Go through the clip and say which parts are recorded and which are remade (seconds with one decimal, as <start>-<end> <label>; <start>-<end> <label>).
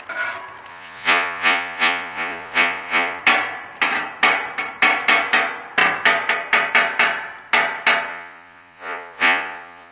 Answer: 0.0-0.7 recorded; 0.7-3.2 remade; 3.2-8.1 recorded; 8.1-9.9 remade